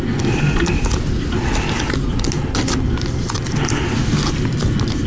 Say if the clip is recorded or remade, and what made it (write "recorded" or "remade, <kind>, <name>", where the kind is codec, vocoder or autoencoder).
recorded